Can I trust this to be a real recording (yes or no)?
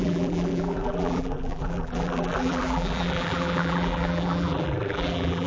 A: no